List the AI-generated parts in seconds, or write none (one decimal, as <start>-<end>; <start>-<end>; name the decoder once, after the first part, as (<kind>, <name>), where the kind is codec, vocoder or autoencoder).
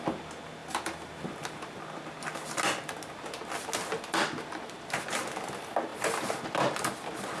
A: none